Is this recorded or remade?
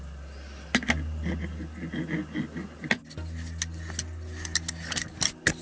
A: recorded